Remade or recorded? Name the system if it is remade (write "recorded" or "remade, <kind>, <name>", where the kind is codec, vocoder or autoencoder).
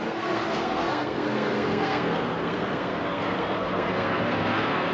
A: remade, codec, SNAC